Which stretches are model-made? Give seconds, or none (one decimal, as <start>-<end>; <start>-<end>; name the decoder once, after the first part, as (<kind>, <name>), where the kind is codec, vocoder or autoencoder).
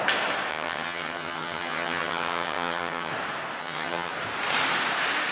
0.5-3.1 (vocoder, HiFi-GAN); 3.6-4.1